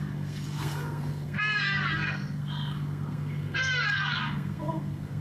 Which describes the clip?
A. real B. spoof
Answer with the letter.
B